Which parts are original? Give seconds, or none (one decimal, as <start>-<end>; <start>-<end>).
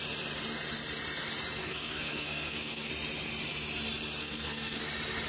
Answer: 0.0-1.6; 2.9-4.2; 4.8-5.3